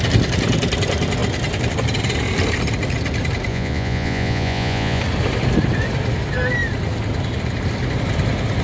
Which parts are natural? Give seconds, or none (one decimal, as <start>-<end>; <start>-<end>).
0.0-3.5; 5.0-8.6